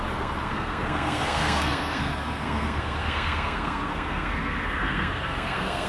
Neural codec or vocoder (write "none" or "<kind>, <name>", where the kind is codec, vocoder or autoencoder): codec, SNAC